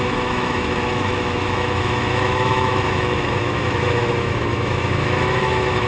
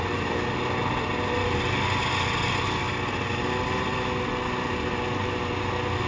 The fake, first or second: first